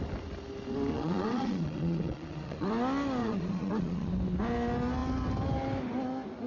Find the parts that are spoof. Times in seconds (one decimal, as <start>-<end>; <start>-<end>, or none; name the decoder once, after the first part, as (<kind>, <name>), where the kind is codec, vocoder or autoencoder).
0.9-2.7 (vocoder, Vocos); 3.2-4.1